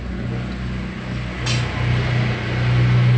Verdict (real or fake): real